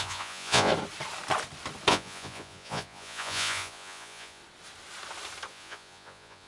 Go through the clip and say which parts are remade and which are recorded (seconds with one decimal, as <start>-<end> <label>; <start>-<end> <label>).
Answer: 0.0-0.7 remade; 0.7-1.9 recorded; 1.9-4.4 remade; 4.4-5.5 recorded; 5.5-6.5 remade